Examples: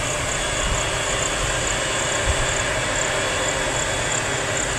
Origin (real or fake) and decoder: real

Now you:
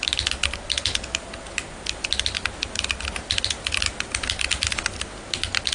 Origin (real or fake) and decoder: real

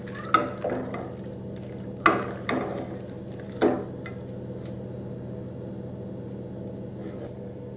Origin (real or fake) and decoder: real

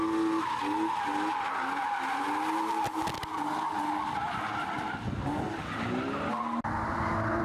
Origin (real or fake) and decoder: real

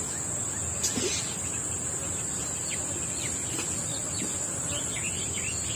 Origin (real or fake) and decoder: real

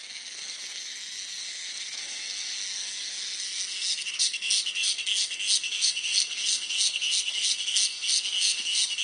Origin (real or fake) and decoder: fake, codec, SNAC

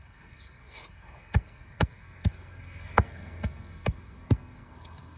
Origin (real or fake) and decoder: fake, codec, SNAC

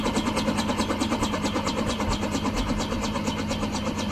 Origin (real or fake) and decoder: real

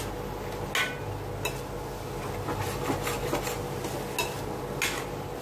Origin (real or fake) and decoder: real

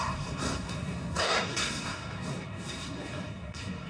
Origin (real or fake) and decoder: fake, codec, SNAC